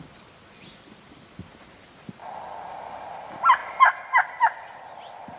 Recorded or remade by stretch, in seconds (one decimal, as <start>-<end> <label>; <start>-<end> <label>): 0.0-5.4 recorded